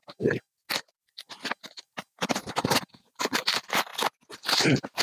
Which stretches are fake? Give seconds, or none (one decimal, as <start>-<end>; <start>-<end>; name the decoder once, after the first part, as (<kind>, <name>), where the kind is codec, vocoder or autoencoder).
3.0-3.9 (vocoder, BigVGAN v2)